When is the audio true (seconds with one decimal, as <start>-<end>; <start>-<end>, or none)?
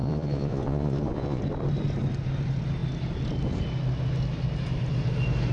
1.4-5.5